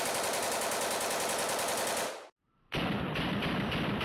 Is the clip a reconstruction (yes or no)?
no